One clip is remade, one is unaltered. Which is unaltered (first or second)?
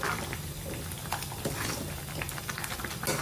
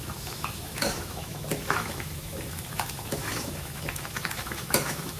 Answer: first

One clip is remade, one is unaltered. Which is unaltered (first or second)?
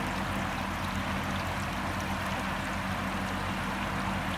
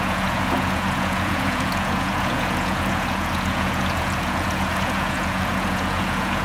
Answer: first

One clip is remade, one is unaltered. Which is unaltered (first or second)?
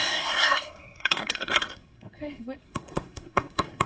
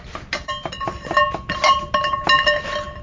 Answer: second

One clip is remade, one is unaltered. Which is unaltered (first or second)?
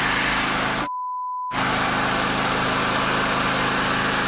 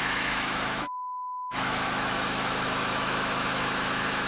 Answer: first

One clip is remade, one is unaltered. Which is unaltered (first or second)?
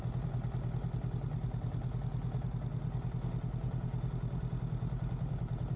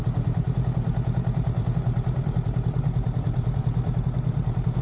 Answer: first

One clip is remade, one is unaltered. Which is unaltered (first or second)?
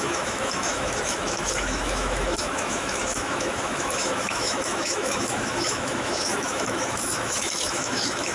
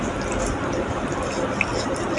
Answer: second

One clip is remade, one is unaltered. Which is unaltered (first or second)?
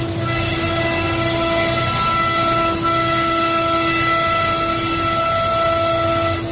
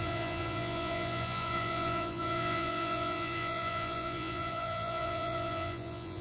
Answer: first